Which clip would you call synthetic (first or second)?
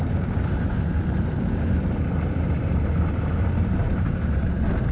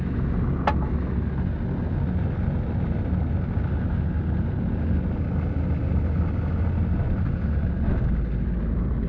first